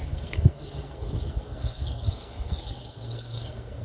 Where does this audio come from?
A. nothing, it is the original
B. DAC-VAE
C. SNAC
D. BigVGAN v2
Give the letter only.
C